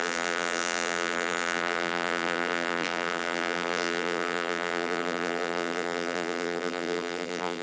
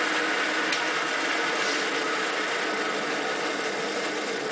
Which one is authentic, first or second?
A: second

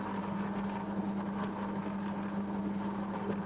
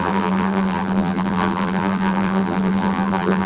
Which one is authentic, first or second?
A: first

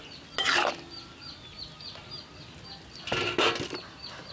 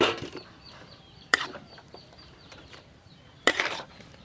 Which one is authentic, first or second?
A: first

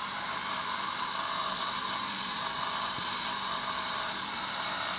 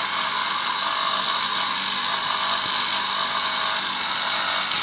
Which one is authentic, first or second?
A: second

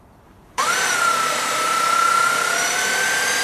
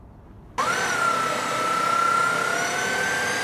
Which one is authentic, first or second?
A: second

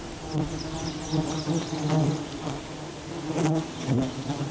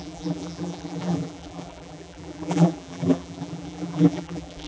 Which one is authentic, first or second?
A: first